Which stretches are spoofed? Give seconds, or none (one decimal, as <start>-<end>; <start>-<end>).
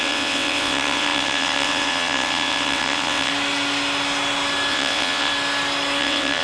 0.0-3.3; 4.7-5.3; 6.0-6.4